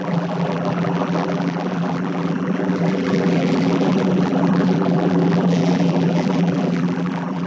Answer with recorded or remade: remade